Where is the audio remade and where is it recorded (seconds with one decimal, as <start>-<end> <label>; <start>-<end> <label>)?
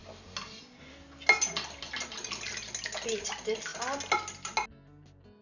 0.0-5.4 recorded